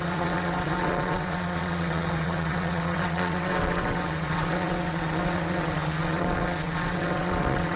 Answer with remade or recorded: remade